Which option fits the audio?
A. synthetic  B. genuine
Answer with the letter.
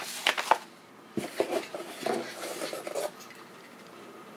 B